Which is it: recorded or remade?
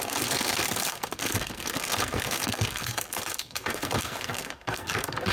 remade